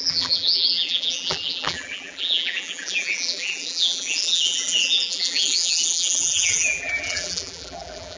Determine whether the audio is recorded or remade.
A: remade